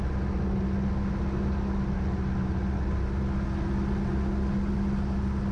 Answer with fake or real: real